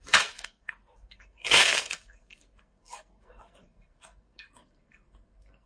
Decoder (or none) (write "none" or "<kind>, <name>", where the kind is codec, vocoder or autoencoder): codec, SNAC